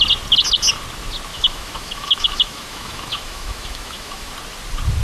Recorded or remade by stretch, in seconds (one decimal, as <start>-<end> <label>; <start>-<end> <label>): 0.0-1.3 recorded; 1.3-4.3 remade; 4.3-5.0 recorded